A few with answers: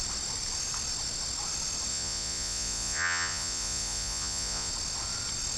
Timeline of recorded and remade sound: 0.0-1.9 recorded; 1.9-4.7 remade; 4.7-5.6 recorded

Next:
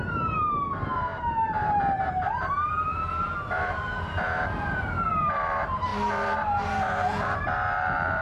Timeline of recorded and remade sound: 0.0-8.2 remade